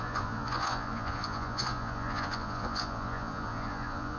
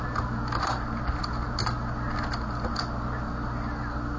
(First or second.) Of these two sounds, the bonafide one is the second